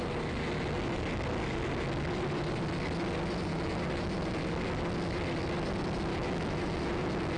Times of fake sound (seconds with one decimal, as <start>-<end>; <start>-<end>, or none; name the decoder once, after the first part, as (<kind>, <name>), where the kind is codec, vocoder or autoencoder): 3.5-4.5 (autoencoder, DAC-VAE); 6.1-7.4